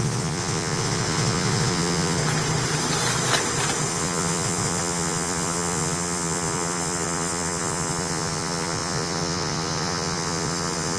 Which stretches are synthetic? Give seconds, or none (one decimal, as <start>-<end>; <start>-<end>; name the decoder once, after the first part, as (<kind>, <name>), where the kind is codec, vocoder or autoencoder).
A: 0.0-2.2 (vocoder, Vocos); 3.9-11.0